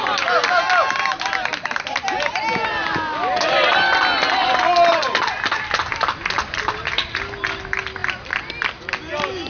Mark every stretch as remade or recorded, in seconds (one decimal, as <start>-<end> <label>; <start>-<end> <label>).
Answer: 0.0-9.5 recorded